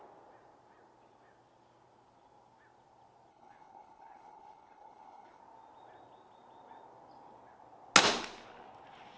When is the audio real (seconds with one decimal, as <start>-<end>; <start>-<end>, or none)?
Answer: 0.0-3.3; 5.4-9.2

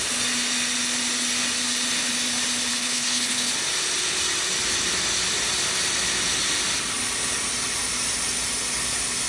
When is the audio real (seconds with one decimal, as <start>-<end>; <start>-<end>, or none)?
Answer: 0.0-2.7; 3.5-9.3

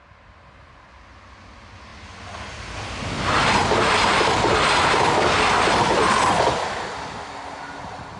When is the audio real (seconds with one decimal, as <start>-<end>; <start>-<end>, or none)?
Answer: 0.0-8.2

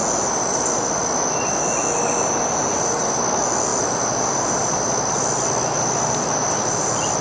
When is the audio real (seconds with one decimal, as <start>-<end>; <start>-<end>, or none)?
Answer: 0.0-7.2

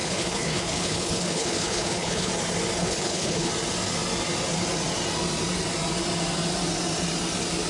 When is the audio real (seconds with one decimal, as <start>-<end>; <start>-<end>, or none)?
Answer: 2.3-2.8; 3.5-7.7

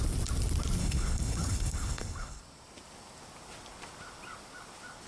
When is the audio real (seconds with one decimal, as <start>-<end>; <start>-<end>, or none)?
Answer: 0.0-0.8; 2.4-5.1

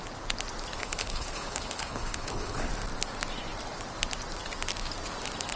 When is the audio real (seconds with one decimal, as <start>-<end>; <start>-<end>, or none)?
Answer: 0.0-0.8; 2.7-5.6